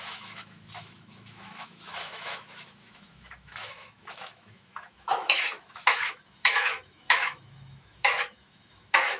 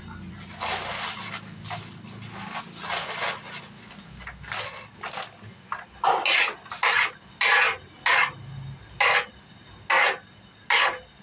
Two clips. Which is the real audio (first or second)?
second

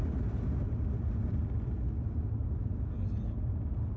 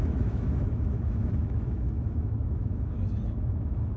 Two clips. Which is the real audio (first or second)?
first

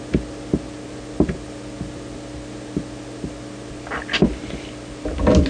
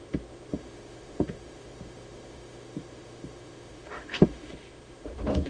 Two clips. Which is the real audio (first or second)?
first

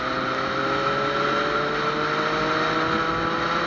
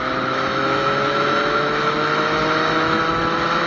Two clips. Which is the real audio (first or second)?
first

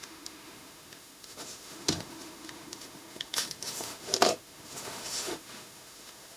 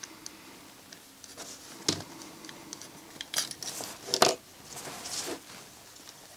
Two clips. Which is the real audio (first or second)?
second